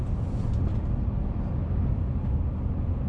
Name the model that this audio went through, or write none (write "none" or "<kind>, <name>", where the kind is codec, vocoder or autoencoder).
none